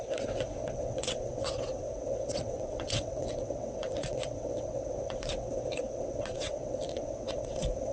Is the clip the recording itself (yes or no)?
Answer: no